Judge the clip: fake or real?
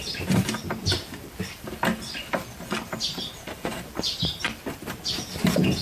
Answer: fake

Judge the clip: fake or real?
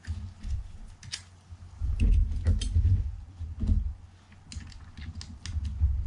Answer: real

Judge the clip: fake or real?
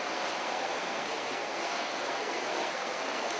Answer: fake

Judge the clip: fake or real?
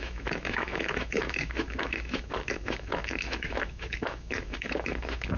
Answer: fake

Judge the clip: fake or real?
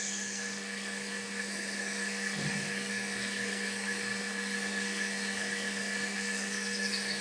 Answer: fake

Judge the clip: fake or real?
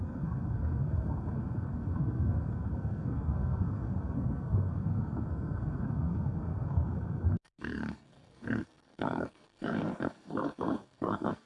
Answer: fake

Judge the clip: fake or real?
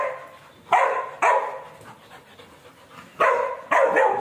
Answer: real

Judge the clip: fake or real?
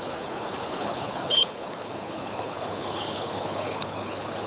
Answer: fake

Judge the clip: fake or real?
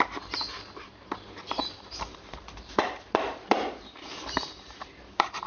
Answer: fake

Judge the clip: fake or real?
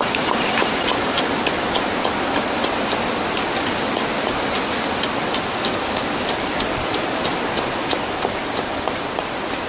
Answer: real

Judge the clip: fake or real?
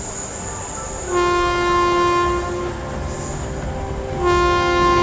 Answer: real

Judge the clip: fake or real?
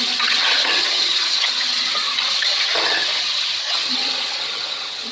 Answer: fake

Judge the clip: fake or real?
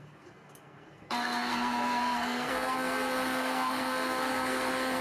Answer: fake